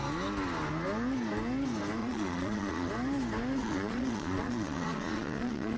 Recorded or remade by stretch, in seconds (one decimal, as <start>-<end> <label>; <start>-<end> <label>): 0.0-2.0 recorded; 2.0-2.9 remade; 2.9-3.6 recorded; 3.6-5.8 remade